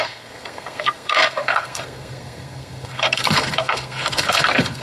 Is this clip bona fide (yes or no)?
no